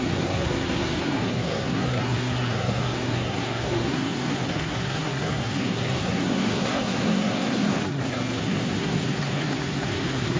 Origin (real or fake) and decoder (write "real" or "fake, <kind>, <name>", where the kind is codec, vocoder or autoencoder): fake, codec, SNAC